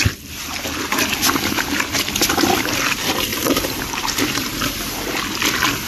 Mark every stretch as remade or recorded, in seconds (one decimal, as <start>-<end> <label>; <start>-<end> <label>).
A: 0.0-3.3 recorded; 3.3-4.8 remade; 4.8-5.9 recorded